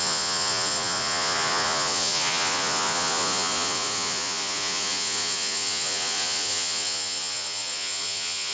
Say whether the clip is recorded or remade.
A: remade